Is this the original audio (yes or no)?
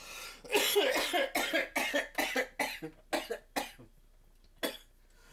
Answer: yes